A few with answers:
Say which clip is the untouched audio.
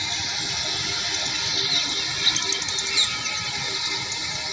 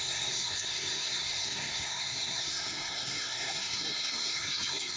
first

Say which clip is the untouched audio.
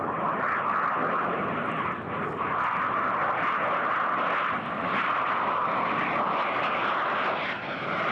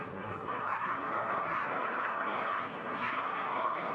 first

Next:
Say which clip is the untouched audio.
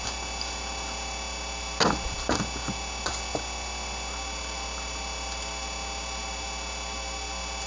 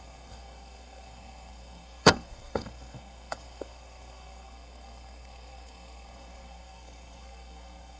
first